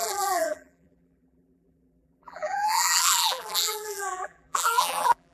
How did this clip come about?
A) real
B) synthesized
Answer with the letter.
B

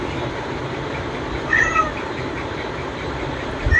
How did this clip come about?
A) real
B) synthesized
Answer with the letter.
B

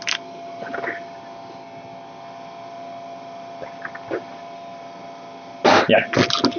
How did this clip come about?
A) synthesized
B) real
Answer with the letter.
B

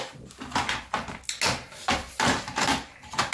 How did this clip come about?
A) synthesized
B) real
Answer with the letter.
B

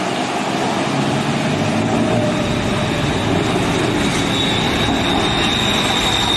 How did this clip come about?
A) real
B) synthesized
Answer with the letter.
A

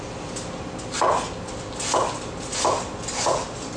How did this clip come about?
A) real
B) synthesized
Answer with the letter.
A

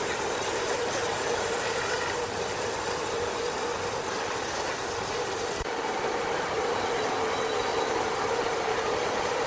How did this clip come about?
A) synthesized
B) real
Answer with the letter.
A